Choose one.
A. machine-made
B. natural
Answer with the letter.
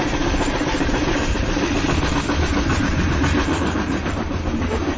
A